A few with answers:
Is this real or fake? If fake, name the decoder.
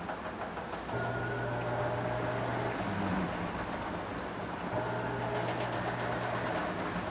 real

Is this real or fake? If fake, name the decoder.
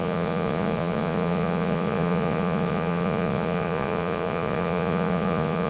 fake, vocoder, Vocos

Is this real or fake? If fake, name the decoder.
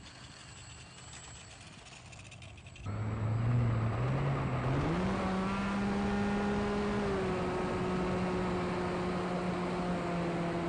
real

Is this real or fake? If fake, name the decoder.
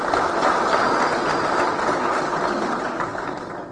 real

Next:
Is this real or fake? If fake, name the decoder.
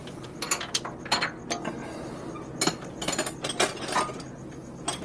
real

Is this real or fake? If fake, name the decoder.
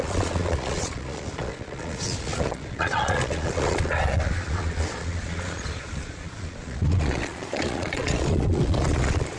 fake, vocoder, Vocos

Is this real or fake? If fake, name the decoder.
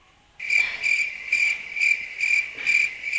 real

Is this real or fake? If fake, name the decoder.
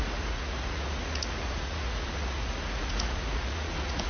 fake, vocoder, Vocos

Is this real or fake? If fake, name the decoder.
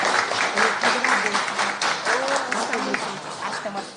real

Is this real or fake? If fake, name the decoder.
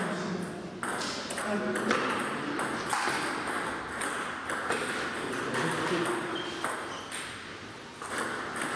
real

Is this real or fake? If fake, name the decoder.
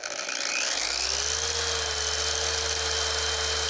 real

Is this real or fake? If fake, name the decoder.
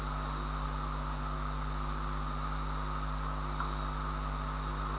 real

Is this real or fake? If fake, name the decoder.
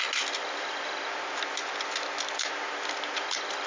real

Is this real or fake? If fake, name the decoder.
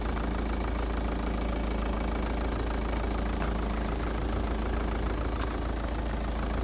real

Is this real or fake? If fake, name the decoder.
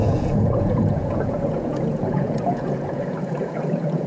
fake, vocoder, Vocos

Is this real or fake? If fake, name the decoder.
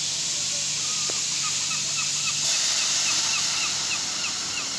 real